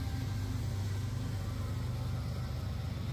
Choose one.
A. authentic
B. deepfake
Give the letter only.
A